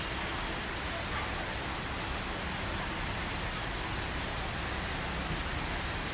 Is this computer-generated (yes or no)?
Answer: no